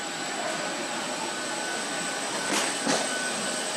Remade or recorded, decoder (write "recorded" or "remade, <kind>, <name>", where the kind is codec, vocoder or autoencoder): recorded